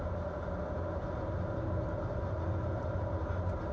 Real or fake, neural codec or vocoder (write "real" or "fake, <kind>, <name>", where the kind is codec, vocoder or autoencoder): real